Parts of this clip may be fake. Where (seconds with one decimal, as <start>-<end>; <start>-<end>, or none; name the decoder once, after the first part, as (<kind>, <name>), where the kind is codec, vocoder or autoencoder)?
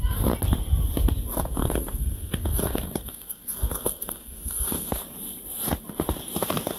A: 1.6-5.0 (codec, SNAC)